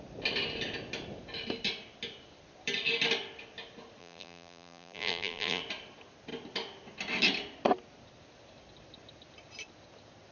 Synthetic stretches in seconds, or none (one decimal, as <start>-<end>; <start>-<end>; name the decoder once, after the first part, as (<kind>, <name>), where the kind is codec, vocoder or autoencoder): 4.0-5.6 (vocoder, BigVGAN v2)